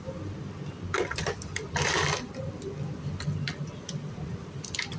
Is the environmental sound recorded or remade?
recorded